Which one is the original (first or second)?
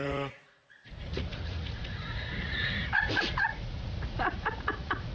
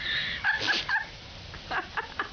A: second